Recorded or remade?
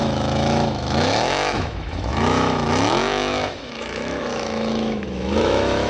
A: remade